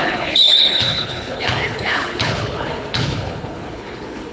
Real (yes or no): no